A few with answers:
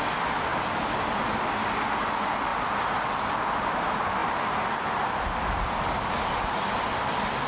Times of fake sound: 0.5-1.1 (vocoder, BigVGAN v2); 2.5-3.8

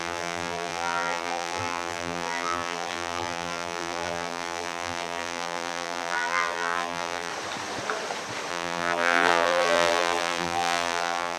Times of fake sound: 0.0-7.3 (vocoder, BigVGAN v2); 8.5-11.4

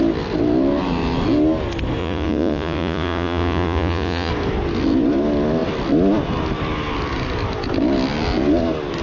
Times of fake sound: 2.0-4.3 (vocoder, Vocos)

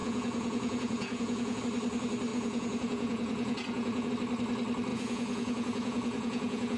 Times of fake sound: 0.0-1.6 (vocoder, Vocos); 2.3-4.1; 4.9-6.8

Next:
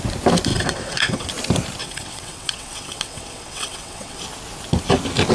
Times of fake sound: 0.5-1.3 (vocoder, WaveNeXt); 1.8-4.2

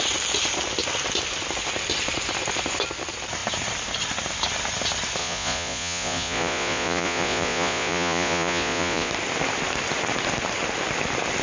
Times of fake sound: 5.2-9.1 (vocoder, Vocos)